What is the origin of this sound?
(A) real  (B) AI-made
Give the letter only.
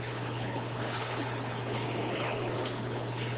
B